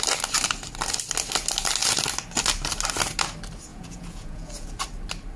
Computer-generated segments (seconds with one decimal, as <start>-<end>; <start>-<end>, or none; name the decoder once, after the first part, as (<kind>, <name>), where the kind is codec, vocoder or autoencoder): 3.7-4.7 (vocoder, Vocos)